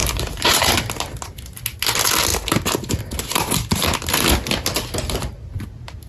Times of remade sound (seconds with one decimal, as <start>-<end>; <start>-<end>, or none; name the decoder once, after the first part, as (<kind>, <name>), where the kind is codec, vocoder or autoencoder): 0.0-0.7 (vocoder, BigVGAN v2)